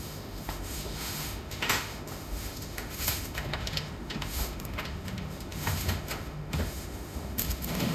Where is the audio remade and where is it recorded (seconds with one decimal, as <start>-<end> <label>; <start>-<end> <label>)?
0.0-7.9 remade